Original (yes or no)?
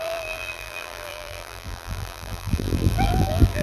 no